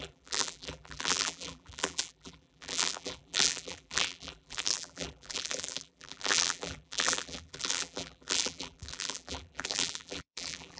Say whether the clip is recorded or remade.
remade